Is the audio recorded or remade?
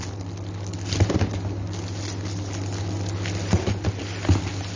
recorded